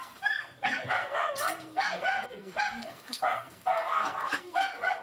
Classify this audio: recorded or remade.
remade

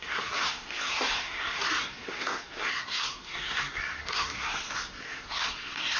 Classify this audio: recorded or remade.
remade